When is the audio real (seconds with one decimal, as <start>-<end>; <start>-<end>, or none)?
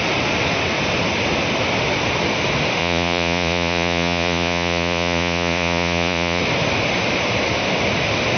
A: 0.0-2.8; 6.4-8.4